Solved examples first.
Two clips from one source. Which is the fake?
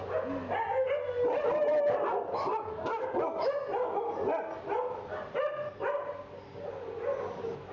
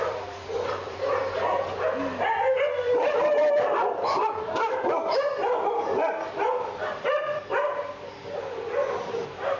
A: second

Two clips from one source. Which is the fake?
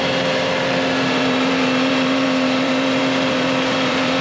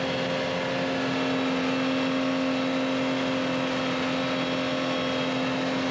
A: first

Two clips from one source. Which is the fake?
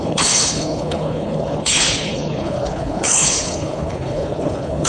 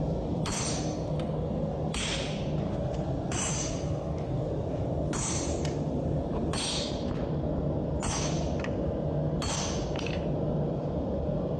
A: first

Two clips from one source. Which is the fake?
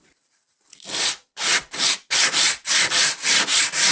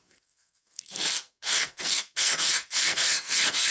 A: second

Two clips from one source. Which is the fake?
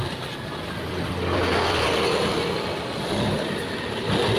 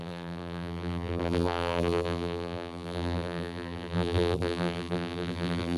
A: second